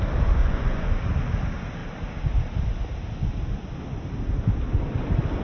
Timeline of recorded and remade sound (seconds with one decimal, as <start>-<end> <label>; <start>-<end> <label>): 0.0-0.4 recorded; 0.4-0.9 remade; 0.9-5.4 recorded